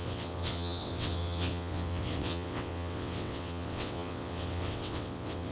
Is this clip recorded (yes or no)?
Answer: no